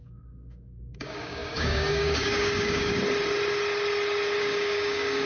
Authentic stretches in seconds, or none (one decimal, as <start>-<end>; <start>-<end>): 2.9-4.4